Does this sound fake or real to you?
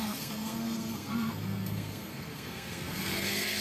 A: fake